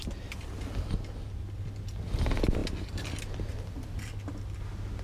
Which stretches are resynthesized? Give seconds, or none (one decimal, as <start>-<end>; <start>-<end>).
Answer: none